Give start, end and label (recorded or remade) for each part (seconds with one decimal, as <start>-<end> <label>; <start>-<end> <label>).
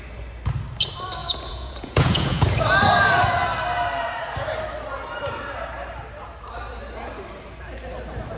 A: 0.0-1.2 recorded; 1.2-2.5 remade; 2.5-8.4 recorded